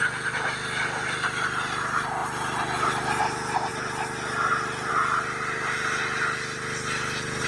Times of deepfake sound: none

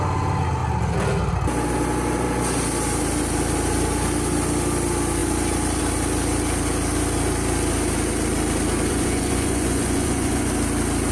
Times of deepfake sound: 8.9-10.5 (vocoder, Vocos)

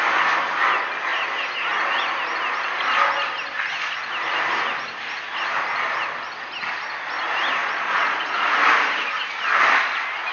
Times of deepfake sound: 7.6-8.3 (vocoder, Vocos)

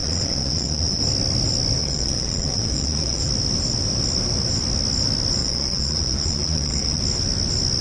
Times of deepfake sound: 0.0-1.0 (vocoder, Vocos); 1.8-3.3; 5.4-7.0